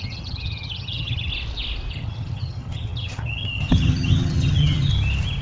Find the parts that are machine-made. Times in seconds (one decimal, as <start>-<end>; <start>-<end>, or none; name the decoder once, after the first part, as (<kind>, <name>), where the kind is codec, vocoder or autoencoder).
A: 0.0-1.3 (vocoder, HiFi-GAN); 1.9-4.9